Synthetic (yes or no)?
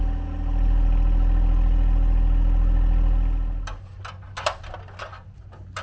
no